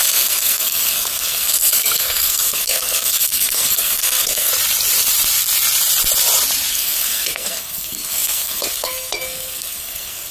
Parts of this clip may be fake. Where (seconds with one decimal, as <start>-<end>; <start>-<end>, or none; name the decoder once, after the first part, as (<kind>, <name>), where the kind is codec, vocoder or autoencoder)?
0.0-4.5 (codec, SNAC); 6.7-10.3